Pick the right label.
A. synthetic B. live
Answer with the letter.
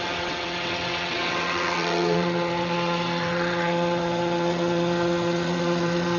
A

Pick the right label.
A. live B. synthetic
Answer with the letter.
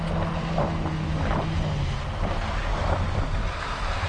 A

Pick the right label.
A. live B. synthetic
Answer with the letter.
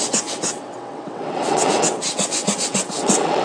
B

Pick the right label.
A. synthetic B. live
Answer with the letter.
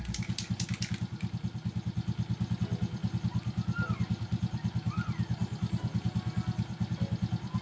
B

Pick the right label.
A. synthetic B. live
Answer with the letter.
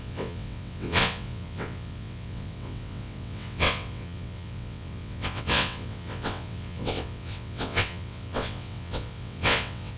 A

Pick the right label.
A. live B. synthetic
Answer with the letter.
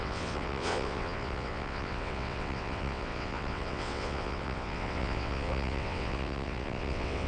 B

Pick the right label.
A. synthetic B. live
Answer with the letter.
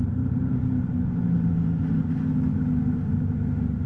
B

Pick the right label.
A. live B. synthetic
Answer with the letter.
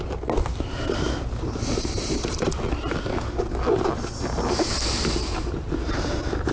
A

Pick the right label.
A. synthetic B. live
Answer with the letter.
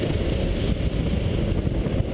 B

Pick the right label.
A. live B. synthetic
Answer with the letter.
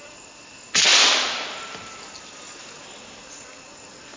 A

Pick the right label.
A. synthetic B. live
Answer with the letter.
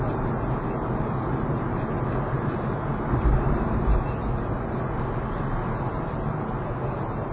B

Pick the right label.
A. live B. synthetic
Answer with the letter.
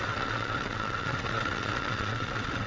B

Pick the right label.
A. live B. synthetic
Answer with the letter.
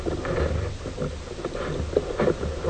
A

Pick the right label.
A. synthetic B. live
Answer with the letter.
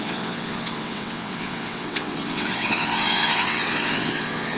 A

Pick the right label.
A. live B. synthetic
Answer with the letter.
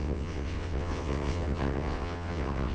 B